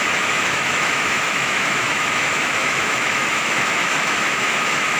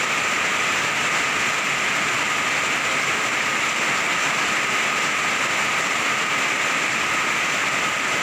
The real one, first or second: second